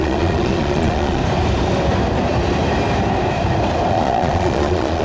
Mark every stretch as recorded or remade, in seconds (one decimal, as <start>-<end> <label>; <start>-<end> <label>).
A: 0.0-1.2 remade; 1.2-3.9 recorded; 3.9-5.0 remade